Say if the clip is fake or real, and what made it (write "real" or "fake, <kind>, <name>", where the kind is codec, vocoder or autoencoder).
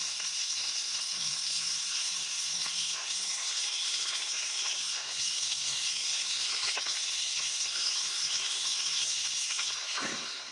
fake, codec, SNAC